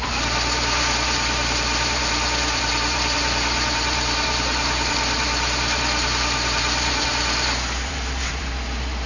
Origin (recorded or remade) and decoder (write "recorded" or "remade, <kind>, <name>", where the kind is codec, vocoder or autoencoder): remade, vocoder, BigVGAN v2